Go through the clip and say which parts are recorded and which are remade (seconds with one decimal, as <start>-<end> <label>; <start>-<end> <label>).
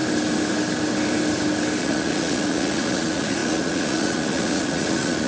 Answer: 0.0-1.8 recorded; 1.8-5.3 remade